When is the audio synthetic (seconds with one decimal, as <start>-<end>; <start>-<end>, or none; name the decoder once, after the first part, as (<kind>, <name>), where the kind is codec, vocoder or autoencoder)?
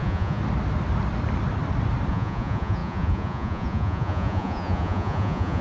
0.0-0.4 (vocoder, Vocos); 2.1-5.6